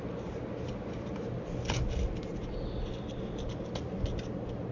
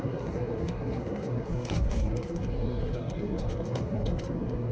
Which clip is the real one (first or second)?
first